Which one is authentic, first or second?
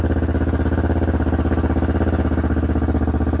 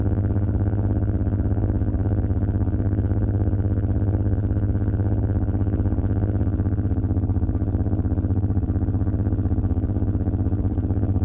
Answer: first